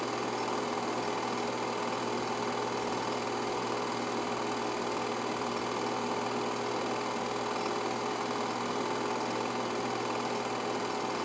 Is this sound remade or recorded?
recorded